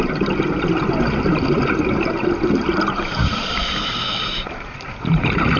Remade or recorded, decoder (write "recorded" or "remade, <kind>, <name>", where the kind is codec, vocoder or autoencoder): recorded